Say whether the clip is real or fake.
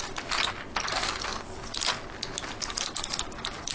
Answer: real